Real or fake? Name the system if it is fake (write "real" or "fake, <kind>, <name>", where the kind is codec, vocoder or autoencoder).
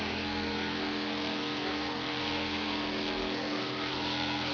fake, codec, SNAC